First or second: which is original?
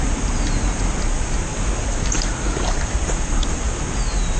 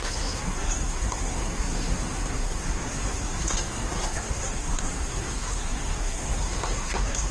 first